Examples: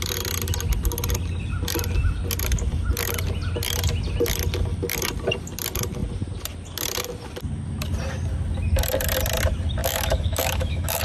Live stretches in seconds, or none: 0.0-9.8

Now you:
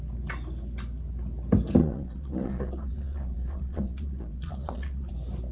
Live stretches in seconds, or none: 0.0-1.8; 5.1-5.5

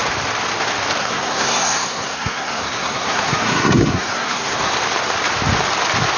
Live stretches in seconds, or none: 0.0-1.0; 4.7-6.2

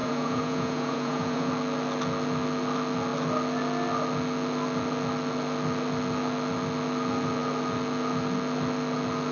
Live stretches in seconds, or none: 1.5-9.3

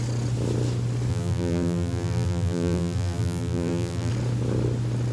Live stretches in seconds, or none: 0.0-1.1; 4.1-5.1

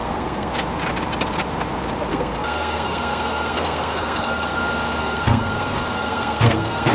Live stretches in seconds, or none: 0.5-2.1; 4.6-5.0